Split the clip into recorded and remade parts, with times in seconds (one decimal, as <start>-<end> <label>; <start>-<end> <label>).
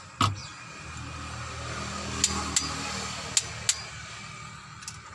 0.0-5.1 recorded